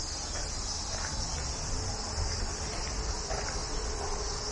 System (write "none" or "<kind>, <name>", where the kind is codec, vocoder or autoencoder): none